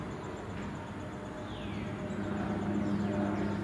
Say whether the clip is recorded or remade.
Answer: recorded